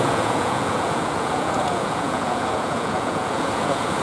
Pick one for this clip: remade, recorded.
remade